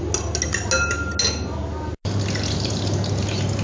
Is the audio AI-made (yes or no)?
no